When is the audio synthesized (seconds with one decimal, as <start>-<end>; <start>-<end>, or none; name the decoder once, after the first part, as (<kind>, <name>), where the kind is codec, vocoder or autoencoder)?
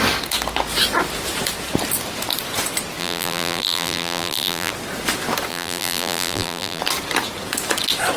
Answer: 3.0-4.7 (vocoder, BigVGAN v2); 5.5-6.8